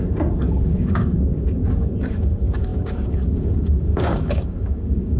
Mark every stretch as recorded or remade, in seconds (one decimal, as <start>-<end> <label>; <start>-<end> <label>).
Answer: 0.0-5.2 remade